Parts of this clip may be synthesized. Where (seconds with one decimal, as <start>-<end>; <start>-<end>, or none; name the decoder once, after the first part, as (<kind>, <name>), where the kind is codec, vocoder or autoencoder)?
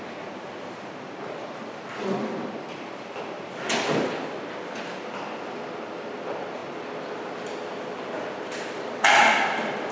none